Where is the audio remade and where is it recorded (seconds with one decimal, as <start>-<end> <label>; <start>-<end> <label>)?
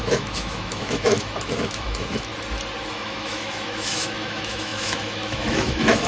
0.0-2.3 remade; 2.3-2.9 recorded; 2.9-6.1 remade